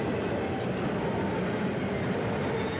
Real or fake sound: real